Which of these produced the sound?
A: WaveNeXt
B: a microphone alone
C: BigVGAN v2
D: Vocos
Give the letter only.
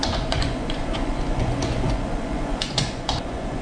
D